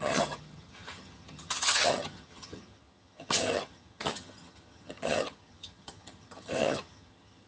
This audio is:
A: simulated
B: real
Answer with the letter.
A